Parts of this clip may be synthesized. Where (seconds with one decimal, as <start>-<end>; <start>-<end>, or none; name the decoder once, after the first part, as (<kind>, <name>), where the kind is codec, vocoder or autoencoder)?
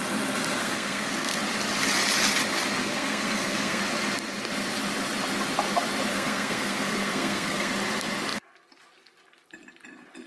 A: 0.6-1.4 (codec, SNAC); 2.8-3.8; 6.1-7.7